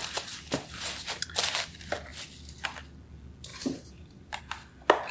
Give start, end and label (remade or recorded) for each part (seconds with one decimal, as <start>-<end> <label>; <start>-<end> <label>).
0.0-3.5 recorded; 3.5-4.4 remade; 4.4-5.1 recorded